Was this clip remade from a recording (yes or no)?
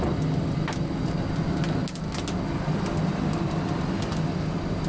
no